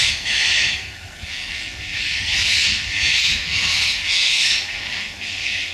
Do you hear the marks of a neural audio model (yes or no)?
yes